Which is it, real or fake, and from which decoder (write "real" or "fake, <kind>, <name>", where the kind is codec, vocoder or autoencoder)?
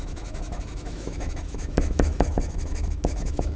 fake, autoencoder, DAC-VAE